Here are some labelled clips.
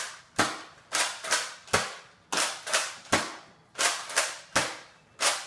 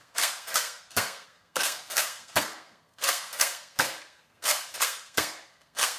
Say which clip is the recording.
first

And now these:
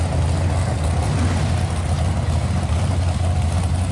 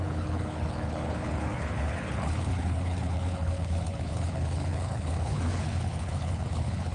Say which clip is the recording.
first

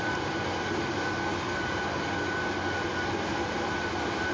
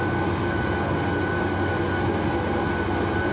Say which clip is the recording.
second